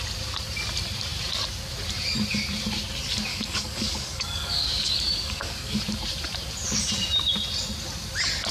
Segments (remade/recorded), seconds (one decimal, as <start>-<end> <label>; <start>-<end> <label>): 0.0-3.3 recorded; 3.3-5.8 remade; 5.8-8.5 recorded